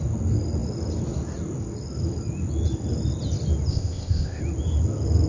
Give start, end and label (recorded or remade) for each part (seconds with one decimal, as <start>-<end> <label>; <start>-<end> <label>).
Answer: 0.0-3.7 recorded; 3.7-4.4 remade; 4.4-5.3 recorded